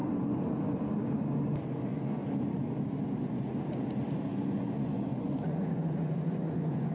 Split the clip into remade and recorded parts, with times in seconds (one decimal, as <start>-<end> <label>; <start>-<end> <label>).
0.0-1.9 recorded; 1.9-2.4 remade; 2.4-4.3 recorded; 4.3-6.9 remade